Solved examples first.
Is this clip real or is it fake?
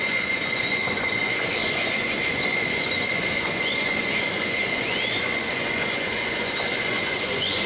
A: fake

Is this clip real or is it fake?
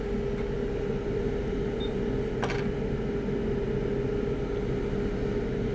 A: real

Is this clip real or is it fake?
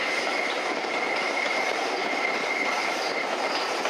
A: fake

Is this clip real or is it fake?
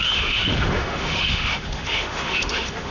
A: fake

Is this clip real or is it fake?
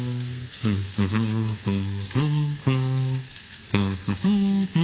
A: fake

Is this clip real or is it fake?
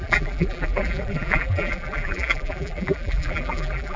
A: fake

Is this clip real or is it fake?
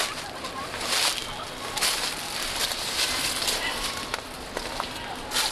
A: real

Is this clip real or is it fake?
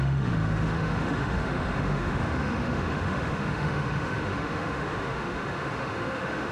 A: fake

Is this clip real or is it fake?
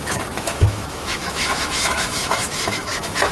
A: fake